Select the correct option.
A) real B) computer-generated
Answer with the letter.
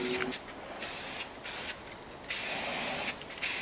A